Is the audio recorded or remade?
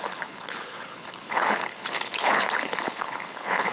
remade